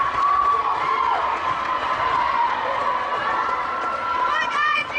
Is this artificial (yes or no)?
yes